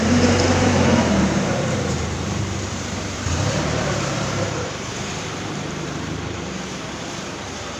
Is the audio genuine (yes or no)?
no